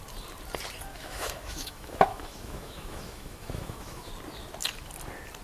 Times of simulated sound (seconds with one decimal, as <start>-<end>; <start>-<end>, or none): 0.9-4.1